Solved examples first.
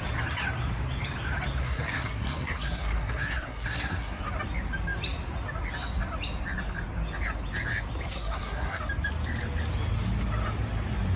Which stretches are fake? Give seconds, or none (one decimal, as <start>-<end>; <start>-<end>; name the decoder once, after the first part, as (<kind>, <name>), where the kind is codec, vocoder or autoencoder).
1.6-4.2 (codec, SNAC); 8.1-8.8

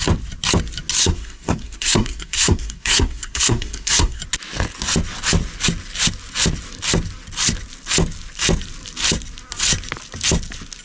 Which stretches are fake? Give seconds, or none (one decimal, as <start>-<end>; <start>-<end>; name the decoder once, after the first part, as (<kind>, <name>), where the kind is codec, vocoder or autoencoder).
1.0-4.2 (codec, SNAC)

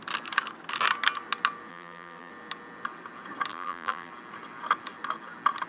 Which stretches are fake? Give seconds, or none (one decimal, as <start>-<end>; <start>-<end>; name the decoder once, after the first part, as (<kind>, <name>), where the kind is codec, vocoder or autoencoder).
1.7-2.3 (vocoder, BigVGAN v2); 3.5-4.1